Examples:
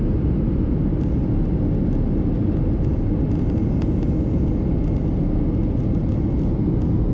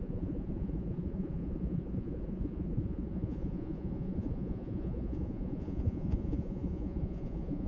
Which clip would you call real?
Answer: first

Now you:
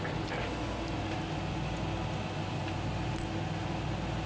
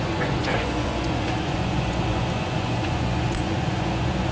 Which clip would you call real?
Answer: first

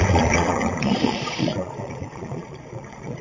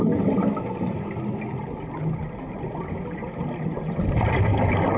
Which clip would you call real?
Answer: second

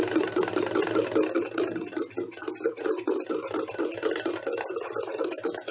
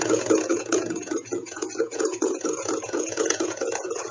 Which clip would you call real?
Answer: first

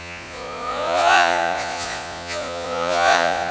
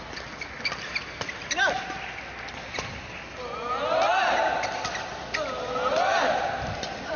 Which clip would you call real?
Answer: second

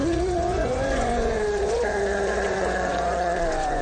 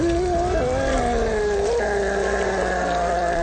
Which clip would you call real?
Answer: second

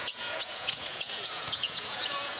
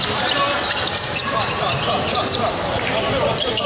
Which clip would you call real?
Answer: second